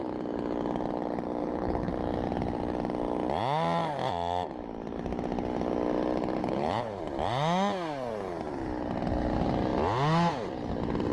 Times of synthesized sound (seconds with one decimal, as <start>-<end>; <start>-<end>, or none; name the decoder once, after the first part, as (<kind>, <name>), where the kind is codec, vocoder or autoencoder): 1.4-1.9 (codec, HILCodec); 6.4-7.0